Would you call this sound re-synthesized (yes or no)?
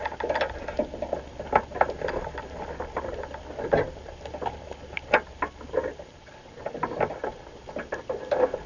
no